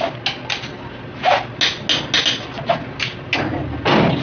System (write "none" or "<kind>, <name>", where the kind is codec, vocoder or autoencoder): none